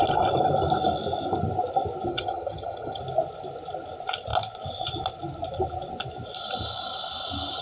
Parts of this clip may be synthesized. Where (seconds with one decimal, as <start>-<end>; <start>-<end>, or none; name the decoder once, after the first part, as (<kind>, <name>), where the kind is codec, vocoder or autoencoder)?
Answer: 2.1-3.0 (vocoder, HiFi-GAN)